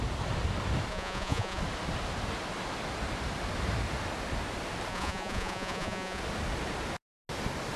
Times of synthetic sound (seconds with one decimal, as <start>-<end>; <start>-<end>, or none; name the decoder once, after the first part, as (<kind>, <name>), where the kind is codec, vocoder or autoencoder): 0.9-1.6 (vocoder, Vocos); 4.9-6.2

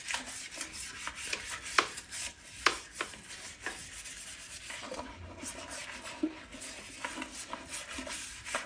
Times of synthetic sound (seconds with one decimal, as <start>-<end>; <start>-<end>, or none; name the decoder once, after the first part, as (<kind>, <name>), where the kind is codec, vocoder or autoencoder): none

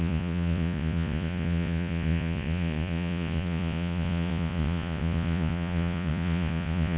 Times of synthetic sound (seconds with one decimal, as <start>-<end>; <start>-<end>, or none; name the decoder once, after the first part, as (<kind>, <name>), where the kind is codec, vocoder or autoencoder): 0.0-7.0 (vocoder, Vocos)

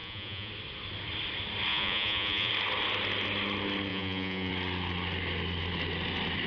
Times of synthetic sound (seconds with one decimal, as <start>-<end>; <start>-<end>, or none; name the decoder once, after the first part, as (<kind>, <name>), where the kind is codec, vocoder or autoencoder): 0.0-0.5 (vocoder, Vocos); 1.7-2.5; 3.9-4.5

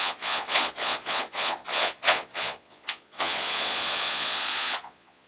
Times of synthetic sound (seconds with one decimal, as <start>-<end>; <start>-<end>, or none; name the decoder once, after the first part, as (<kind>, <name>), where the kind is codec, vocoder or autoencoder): 0.0-5.3 (vocoder, Vocos)